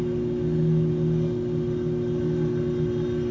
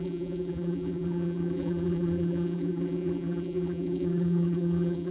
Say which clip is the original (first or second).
first